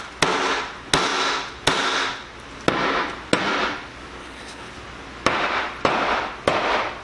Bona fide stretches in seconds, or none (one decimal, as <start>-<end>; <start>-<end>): 0.0-4.2; 4.7-7.0